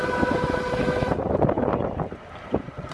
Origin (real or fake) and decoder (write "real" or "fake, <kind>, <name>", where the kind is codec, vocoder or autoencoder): real